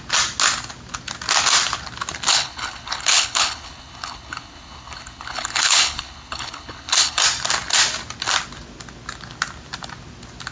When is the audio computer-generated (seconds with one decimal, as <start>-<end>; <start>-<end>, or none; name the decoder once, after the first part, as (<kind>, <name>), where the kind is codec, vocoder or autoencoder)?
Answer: 2.3-7.2 (codec, HILCodec)